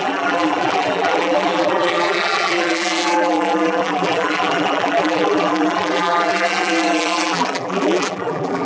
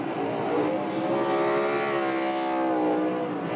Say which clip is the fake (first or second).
first